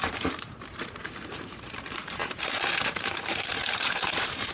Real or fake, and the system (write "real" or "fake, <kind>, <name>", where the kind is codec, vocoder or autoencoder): fake, vocoder, BigVGAN v2